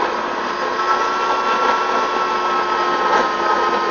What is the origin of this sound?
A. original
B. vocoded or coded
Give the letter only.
A